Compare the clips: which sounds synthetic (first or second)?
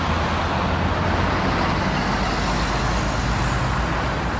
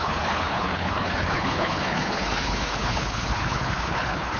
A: second